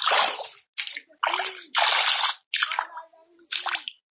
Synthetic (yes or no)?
no